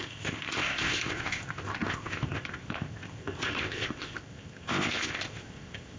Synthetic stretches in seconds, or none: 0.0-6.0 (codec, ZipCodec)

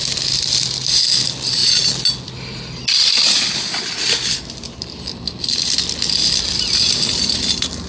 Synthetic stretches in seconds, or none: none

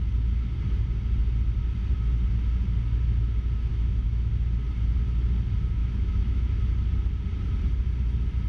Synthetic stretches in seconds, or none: 3.7-4.3 (autoencoder, DAC-VAE); 5.8-6.5